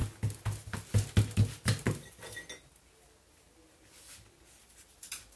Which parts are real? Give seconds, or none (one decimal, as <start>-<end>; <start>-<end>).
0.0-5.4